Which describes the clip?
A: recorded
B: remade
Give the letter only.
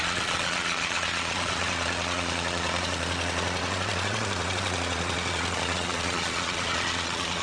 B